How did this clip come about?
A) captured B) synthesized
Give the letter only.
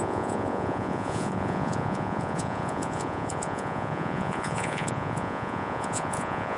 B